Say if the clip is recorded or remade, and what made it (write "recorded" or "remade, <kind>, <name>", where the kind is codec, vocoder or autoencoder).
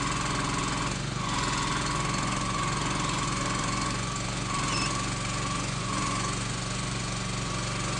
remade, vocoder, Vocos